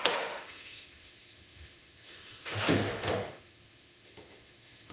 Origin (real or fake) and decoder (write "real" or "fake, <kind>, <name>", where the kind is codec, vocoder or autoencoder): fake, autoencoder, DAC-VAE